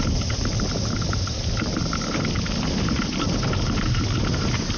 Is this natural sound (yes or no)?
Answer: yes